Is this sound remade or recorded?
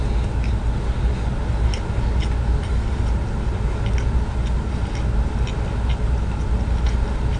recorded